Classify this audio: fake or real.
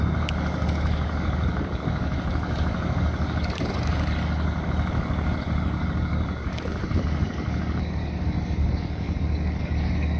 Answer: fake